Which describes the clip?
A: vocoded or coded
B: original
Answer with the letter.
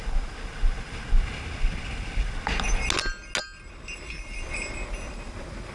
B